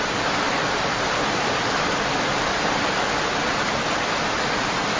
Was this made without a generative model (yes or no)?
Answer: yes